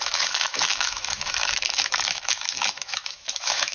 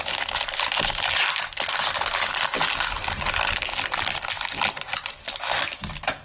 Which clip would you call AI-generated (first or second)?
first